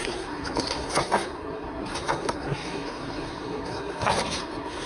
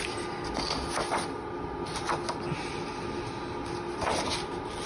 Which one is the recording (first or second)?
second